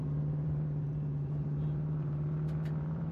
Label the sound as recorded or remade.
remade